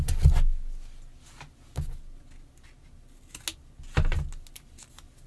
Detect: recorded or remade recorded